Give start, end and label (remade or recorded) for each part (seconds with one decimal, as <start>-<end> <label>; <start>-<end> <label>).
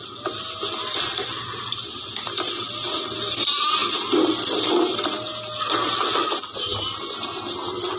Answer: 0.0-8.0 recorded